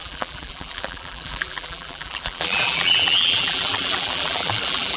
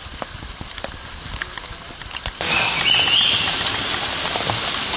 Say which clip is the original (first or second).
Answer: second